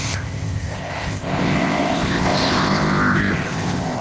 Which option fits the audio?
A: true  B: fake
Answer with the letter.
B